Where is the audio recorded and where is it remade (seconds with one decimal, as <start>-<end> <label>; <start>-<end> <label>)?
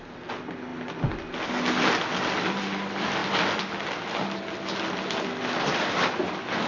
0.0-6.7 recorded